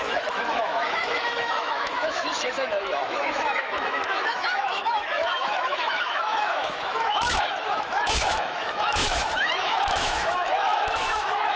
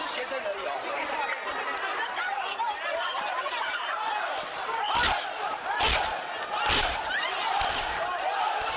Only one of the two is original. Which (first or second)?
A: second